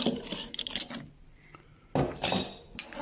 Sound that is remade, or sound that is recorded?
recorded